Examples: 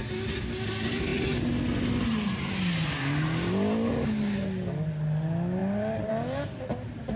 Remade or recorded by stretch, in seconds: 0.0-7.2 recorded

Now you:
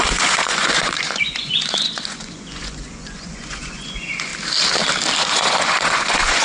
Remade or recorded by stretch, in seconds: 0.0-4.3 remade; 4.3-5.2 recorded; 5.2-6.4 remade

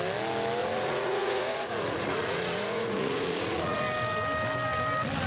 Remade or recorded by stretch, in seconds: 0.0-0.6 recorded; 0.6-3.8 remade; 3.8-5.3 recorded

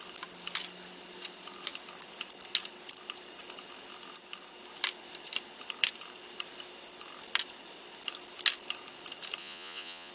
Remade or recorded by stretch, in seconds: 0.0-9.4 recorded; 9.4-10.1 remade

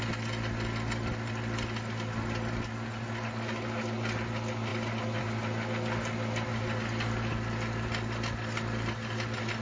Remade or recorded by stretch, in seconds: 0.0-9.6 recorded

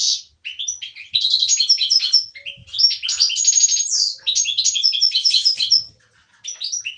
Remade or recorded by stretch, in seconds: 0.0-7.0 recorded